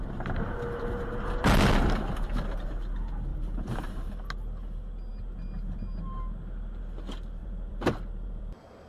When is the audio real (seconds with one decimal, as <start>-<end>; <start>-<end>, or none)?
0.0-3.3; 4.1-7.4; 8.4-8.9